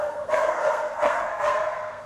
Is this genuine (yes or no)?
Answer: no